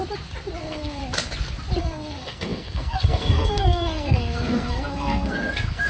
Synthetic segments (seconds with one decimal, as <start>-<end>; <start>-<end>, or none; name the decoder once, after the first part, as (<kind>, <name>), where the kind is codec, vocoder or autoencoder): 0.6-1.0 (codec, SNAC); 1.8-5.9